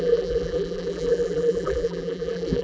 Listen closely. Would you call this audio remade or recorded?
remade